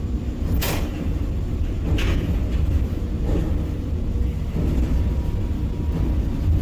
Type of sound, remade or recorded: recorded